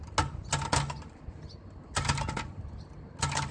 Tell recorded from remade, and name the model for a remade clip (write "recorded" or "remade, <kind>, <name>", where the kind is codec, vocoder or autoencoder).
recorded